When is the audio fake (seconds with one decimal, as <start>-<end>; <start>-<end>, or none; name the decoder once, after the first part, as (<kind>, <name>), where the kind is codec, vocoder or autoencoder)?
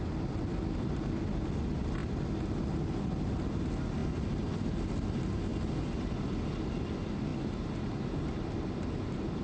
none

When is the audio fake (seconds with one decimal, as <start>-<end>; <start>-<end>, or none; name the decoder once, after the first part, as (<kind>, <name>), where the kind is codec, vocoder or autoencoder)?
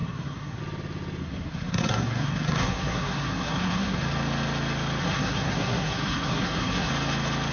0.0-0.6 (codec, SNAC); 1.2-4.0; 5.0-6.9